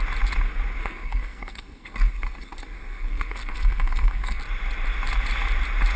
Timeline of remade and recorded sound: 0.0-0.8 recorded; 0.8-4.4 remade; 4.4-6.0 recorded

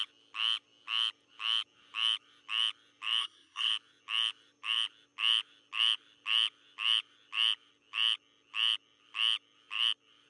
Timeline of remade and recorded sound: 0.0-3.2 recorded; 3.2-3.7 remade; 3.7-10.3 recorded

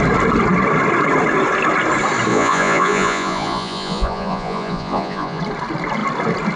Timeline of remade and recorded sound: 0.0-2.3 recorded; 2.3-5.4 remade; 5.4-6.6 recorded